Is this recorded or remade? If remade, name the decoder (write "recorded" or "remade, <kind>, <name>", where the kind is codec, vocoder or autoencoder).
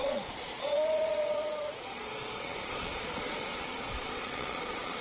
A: remade, vocoder, Vocos